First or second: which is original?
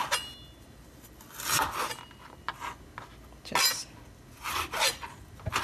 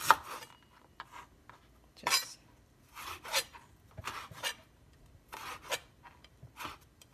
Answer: first